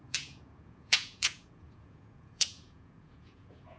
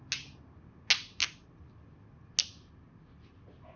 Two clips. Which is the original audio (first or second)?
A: second